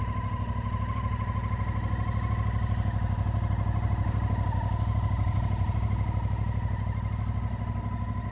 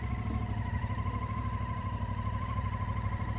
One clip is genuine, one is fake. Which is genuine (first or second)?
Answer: first